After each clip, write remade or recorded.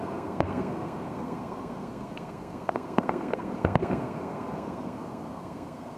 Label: remade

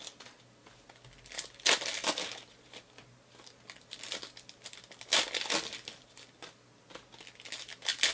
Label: recorded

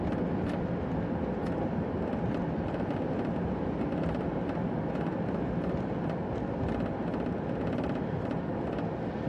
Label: recorded